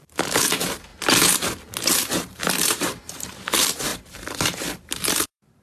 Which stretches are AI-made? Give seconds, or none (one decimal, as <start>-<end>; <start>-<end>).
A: 0.0-0.9; 1.9-5.6